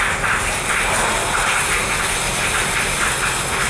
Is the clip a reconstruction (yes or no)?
no